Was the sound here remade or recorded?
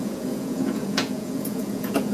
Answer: remade